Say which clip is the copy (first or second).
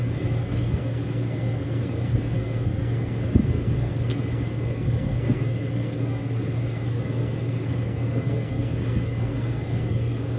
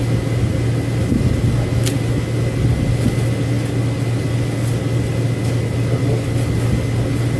first